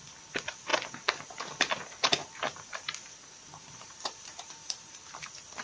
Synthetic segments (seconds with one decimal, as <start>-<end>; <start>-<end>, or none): 2.2-5.0